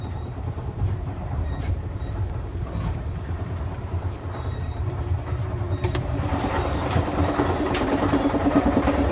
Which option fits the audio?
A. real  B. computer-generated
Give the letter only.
B